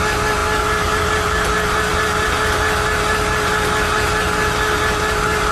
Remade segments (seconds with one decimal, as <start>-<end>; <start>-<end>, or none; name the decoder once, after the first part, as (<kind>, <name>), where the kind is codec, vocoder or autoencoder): none

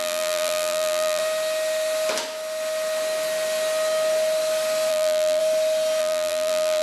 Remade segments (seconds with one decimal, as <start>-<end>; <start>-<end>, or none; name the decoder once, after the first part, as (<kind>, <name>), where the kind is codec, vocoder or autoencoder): 0.0-1.2 (vocoder, BigVGAN v2); 4.9-5.4; 6.0-6.8

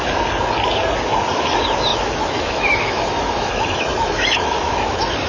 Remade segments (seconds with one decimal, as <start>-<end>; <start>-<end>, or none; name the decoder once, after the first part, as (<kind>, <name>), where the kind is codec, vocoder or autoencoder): 1.9-5.3 (autoencoder, DAC-VAE)

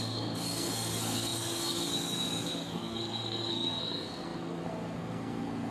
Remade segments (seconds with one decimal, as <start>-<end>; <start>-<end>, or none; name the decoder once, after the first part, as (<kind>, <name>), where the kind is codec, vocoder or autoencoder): 0.0-5.7 (codec, SNAC)